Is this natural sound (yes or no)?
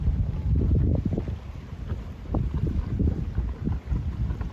yes